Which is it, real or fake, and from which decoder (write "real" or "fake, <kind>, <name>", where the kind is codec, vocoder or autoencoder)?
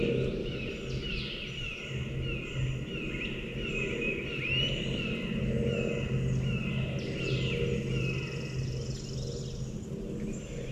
real